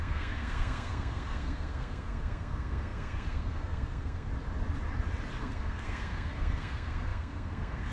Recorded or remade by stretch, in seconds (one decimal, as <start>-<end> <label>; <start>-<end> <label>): 0.0-4.3 remade; 4.3-5.4 recorded; 5.4-7.9 remade